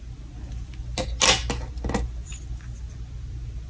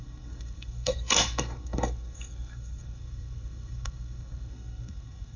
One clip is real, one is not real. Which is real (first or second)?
first